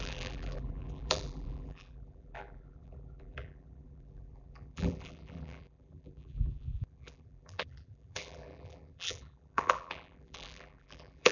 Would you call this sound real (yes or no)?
no